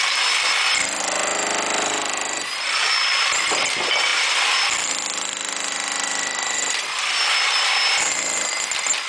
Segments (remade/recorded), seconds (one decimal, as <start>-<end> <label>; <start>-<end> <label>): 0.0-9.1 recorded